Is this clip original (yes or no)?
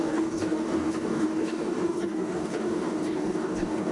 no